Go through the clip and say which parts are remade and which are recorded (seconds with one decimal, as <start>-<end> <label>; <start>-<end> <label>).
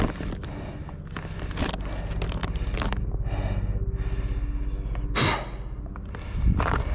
0.0-2.4 recorded; 2.4-3.0 remade; 3.0-6.9 recorded